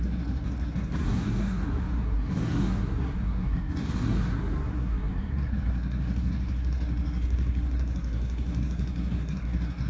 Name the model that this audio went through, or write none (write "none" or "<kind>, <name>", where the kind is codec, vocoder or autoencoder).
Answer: codec, SNAC